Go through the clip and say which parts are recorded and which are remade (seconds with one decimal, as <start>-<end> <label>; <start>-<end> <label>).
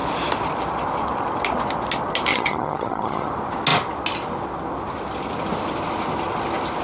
0.0-2.3 recorded; 2.3-3.3 remade; 3.3-6.8 recorded